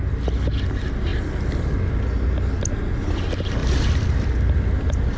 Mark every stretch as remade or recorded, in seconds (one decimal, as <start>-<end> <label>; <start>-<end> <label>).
0.0-3.6 recorded; 3.6-4.7 remade; 4.7-5.2 recorded